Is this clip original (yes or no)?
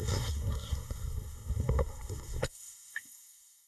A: no